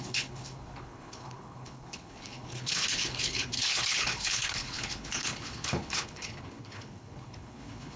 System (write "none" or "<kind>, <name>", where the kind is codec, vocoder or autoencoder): codec, HILCodec